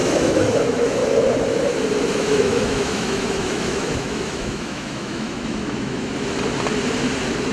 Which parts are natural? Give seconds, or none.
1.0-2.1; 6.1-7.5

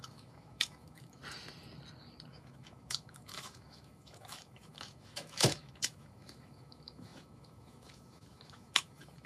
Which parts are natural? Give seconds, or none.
1.2-2.3

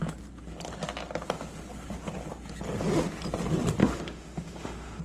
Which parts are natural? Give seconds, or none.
0.0-3.8

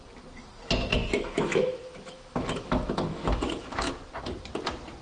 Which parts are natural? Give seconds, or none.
0.0-1.0; 3.9-5.0